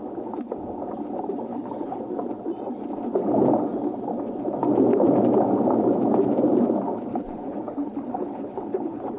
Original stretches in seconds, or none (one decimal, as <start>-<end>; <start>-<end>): 0.0-1.5; 2.0-7.1